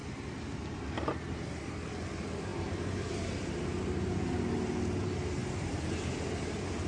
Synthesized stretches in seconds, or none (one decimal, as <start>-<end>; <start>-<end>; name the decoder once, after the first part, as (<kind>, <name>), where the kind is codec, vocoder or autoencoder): 0.0-1.6 (vocoder, BigVGAN v2); 5.4-6.0